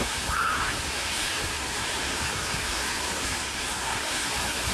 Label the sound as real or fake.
fake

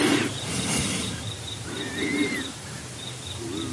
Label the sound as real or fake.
real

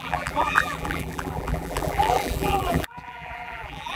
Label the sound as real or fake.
fake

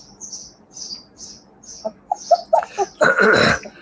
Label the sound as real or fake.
real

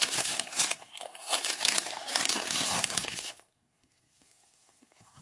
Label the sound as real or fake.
fake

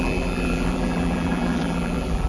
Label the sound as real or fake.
fake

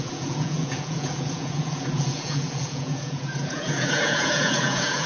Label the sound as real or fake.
fake